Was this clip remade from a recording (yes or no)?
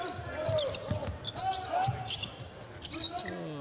no